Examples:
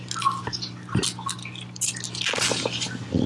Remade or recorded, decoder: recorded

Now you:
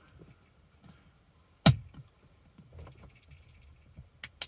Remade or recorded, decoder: recorded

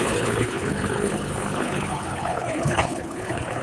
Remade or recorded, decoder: remade, codec, HILCodec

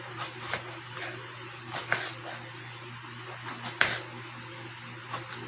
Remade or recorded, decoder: recorded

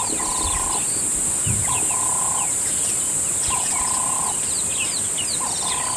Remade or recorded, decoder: recorded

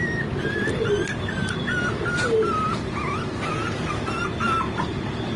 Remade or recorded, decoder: recorded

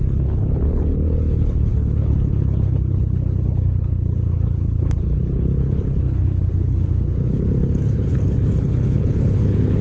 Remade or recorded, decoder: remade, codec, HILCodec